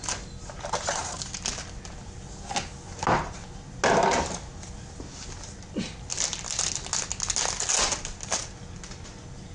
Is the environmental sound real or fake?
real